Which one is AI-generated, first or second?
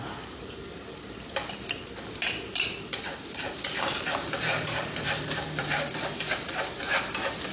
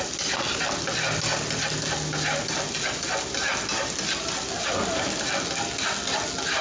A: first